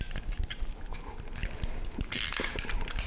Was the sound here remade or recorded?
recorded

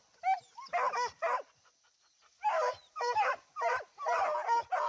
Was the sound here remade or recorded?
recorded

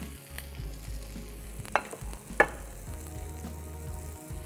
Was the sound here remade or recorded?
recorded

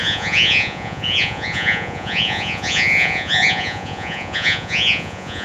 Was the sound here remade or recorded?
remade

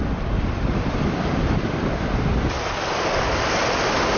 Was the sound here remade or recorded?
recorded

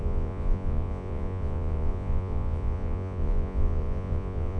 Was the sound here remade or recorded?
remade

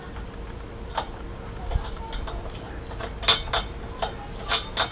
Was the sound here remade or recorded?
recorded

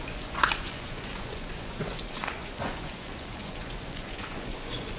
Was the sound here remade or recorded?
remade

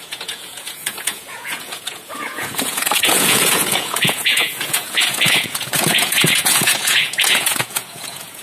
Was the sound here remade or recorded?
remade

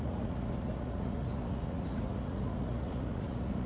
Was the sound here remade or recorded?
remade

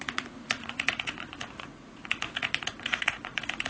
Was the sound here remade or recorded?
remade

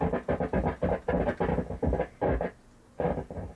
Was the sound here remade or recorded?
recorded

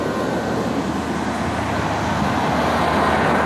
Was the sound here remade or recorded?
recorded